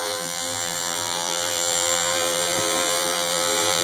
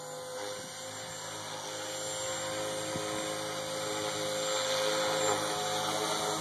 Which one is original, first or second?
second